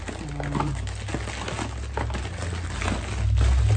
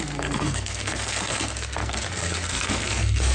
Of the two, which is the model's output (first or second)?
second